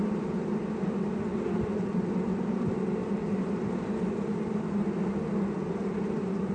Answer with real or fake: real